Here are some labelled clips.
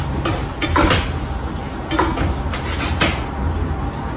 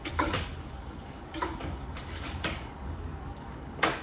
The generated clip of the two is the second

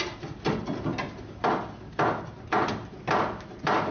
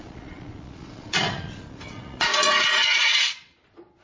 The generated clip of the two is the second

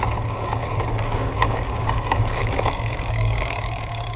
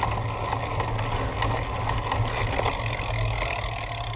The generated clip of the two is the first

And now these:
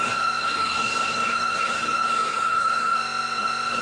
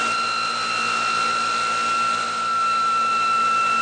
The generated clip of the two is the first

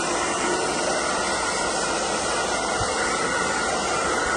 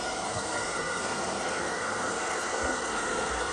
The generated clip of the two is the second